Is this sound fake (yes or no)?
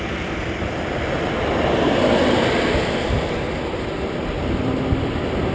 no